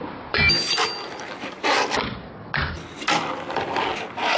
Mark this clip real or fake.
real